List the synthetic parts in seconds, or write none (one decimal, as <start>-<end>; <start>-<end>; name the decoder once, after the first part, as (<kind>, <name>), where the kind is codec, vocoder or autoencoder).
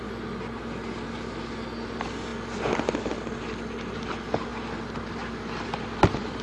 none